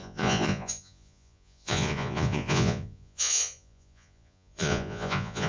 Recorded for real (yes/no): no